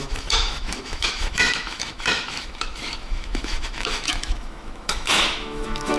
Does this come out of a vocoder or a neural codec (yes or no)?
yes